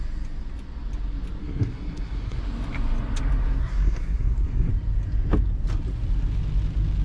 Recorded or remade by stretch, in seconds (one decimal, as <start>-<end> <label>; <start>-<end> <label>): 0.0-1.4 recorded; 1.4-2.4 remade; 2.4-3.6 recorded; 3.6-4.7 remade; 4.7-7.0 recorded